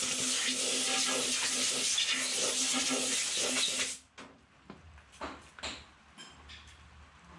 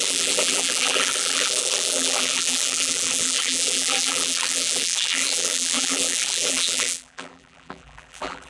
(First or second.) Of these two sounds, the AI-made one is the second